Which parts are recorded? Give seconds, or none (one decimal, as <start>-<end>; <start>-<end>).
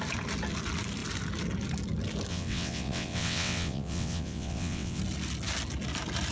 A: 0.0-2.3; 5.0-6.3